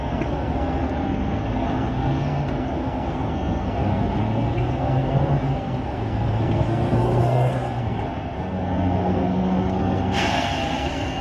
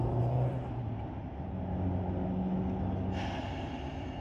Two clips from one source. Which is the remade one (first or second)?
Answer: first